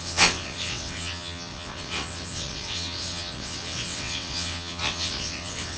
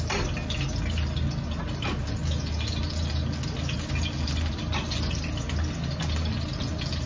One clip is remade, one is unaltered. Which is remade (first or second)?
first